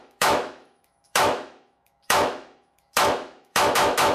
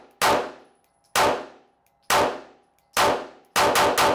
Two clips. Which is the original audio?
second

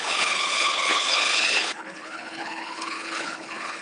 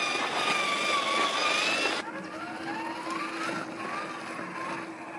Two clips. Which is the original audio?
second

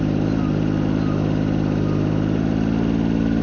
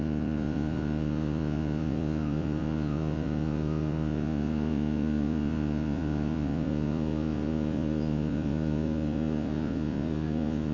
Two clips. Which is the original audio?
first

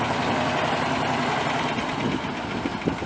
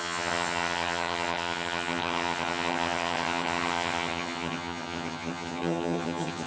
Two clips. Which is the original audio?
first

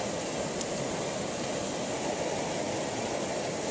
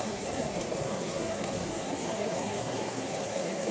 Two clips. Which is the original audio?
first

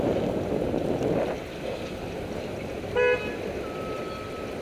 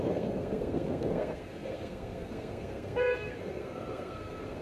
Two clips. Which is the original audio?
first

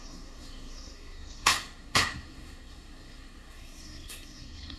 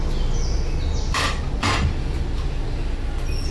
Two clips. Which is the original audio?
second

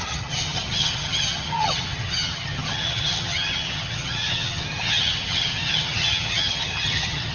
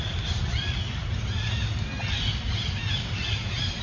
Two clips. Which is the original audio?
second